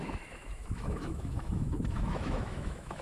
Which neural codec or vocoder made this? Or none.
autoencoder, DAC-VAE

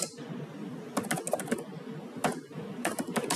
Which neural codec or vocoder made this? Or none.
none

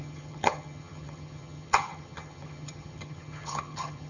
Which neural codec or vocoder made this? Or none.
vocoder, HiFi-GAN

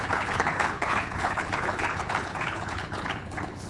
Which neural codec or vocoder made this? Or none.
codec, HILCodec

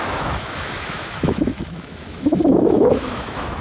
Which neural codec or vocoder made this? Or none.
autoencoder, DAC-VAE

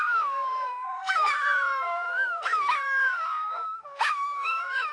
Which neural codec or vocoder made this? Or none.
autoencoder, DAC-VAE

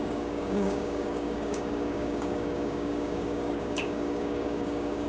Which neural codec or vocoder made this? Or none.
codec, DAC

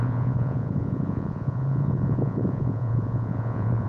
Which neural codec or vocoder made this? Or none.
vocoder, Vocos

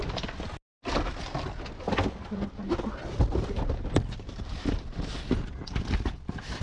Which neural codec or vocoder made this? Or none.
none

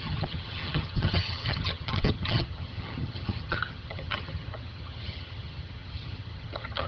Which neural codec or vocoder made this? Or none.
vocoder, HiFi-GAN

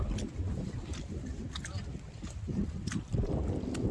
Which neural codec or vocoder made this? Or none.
none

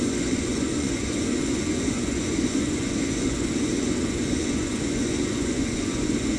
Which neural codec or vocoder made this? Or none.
vocoder, Vocos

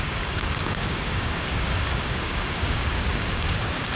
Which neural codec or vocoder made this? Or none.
codec, DAC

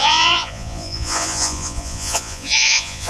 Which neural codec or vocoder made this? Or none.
vocoder, Vocos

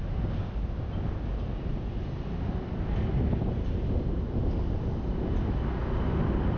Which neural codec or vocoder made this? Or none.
none